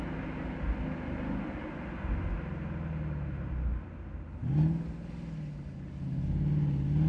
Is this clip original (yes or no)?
yes